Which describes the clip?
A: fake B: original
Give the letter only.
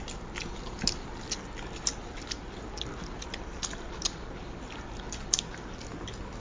B